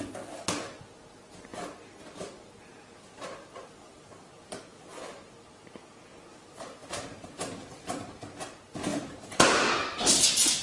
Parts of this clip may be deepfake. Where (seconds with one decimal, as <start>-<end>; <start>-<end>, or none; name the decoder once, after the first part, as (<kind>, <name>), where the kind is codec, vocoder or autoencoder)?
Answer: 6.3-8.1 (vocoder, BigVGAN v2); 8.9-9.7